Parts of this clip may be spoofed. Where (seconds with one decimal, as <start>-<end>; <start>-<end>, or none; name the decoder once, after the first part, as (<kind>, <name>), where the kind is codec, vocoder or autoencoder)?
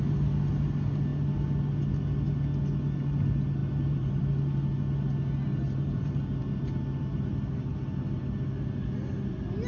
3.6-4.2 (vocoder, BigVGAN v2); 5.5-6.4